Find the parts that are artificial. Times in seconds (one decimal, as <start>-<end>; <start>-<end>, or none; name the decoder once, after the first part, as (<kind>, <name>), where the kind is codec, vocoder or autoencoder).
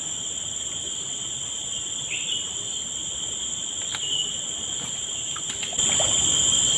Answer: none